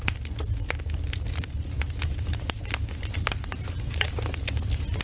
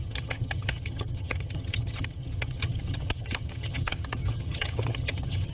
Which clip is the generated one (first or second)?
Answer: second